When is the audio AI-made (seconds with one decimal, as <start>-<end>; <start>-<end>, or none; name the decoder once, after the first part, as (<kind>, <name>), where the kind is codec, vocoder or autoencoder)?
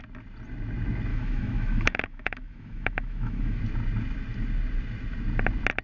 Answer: 1.1-3.6 (autoencoder, DAC-VAE)